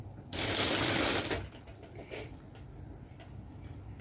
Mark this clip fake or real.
real